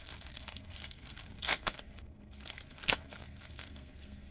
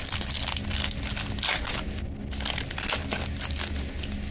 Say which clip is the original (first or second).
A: second